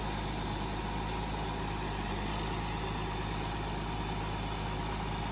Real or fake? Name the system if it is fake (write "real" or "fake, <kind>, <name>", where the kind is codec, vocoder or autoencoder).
real